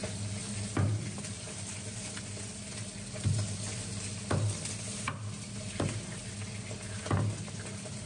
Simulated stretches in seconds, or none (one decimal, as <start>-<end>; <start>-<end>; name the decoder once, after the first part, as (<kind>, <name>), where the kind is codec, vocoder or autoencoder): none